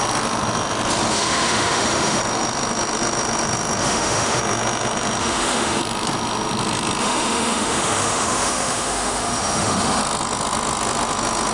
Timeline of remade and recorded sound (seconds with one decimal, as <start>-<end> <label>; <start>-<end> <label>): 0.0-1.1 recorded; 1.1-2.2 remade; 2.2-3.8 recorded; 3.8-4.4 remade; 4.4-5.2 recorded; 5.2-5.8 remade; 5.8-7.0 recorded; 7.0-10.0 remade; 10.0-11.5 recorded